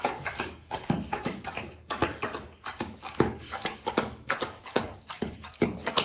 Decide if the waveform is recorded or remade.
remade